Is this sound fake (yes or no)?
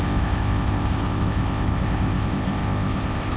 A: yes